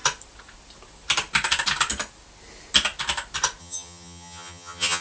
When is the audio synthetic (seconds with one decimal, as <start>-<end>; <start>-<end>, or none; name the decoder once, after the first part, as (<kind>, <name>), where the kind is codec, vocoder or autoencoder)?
3.6-5.0 (vocoder, HiFi-GAN)